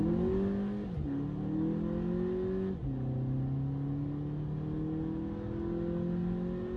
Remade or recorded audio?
recorded